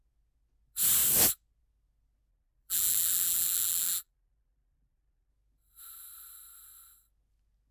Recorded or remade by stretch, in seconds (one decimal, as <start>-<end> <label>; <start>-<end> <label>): 0.0-2.3 recorded; 2.3-5.3 remade; 5.3-7.7 recorded